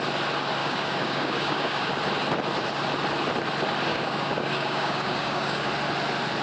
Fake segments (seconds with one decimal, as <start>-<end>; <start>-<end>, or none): 0.6-2.0; 3.9-5.7